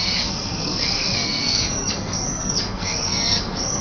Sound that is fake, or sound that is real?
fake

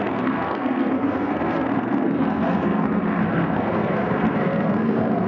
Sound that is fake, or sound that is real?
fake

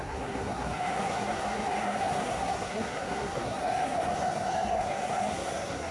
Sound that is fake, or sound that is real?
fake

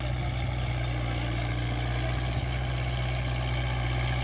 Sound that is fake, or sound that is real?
real